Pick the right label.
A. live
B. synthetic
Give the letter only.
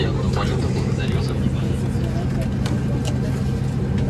A